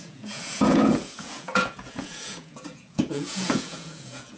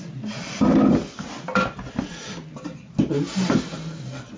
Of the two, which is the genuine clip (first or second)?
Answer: second